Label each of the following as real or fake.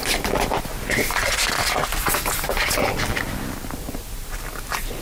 real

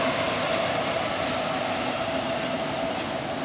real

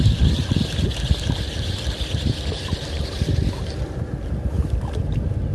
fake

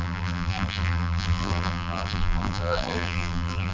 fake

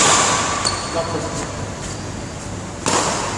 real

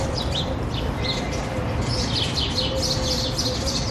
real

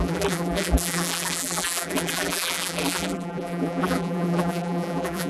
fake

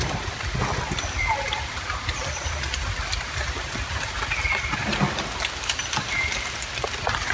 real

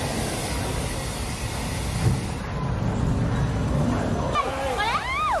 real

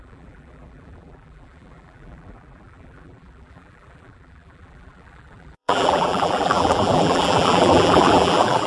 fake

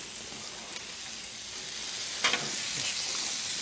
real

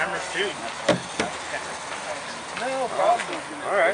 real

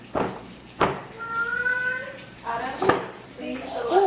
fake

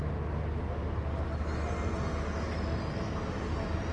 real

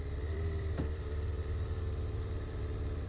fake